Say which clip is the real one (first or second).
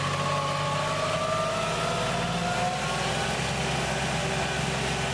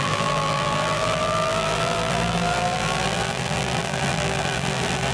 first